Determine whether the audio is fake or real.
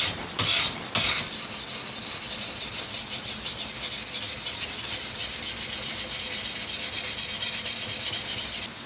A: real